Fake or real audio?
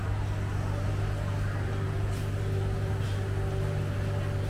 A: real